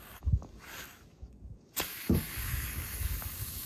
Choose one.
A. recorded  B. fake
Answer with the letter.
B